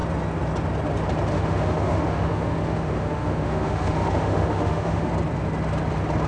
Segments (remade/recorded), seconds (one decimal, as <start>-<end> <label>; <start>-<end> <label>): 0.0-1.3 recorded; 1.3-5.1 remade; 5.1-6.3 recorded